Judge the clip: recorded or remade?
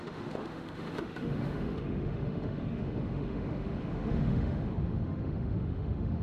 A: remade